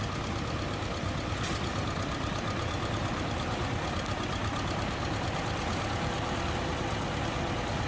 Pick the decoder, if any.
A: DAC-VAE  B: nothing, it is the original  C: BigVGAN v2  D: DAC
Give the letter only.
B